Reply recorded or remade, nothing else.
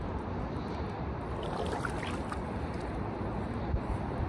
recorded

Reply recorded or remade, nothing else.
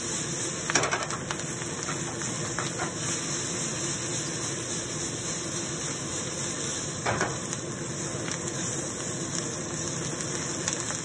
recorded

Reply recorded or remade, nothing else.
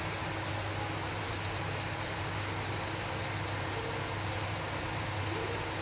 recorded